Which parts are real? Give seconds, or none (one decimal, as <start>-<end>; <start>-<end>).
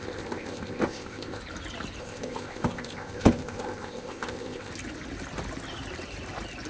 1.4-2.0; 4.7-6.7